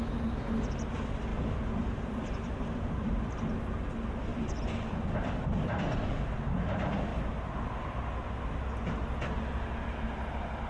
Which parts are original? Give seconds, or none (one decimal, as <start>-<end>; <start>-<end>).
0.0-1.3; 3.6-4.3; 5.3-7.1; 7.7-10.7